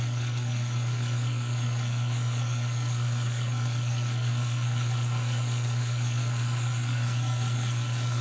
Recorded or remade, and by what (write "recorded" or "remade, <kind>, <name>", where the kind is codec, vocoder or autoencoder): remade, codec, SNAC